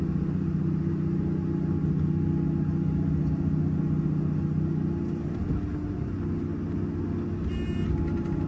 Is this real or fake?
real